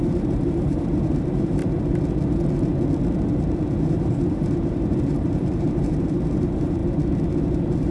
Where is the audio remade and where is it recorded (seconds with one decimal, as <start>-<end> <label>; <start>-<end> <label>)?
0.0-1.6 remade; 1.6-3.8 recorded; 3.8-6.8 remade; 6.8-7.4 recorded; 7.4-7.9 remade